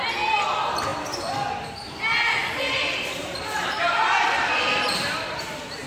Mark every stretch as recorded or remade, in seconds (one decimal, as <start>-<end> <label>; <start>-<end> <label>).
0.0-2.4 recorded; 2.4-5.4 remade; 5.4-5.9 recorded